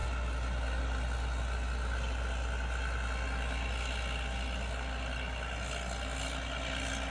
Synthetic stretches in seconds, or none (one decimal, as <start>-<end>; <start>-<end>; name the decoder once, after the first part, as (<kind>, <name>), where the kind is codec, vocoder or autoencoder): none